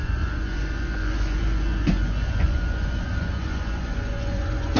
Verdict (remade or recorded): remade